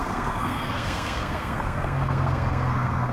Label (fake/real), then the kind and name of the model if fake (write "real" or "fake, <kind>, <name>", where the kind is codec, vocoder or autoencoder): fake, codec, SNAC